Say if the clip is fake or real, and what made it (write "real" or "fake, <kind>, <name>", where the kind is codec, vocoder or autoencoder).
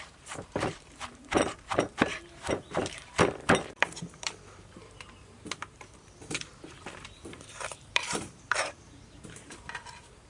fake, vocoder, BigVGAN v2